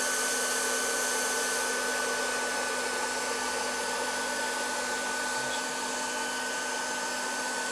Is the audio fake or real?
real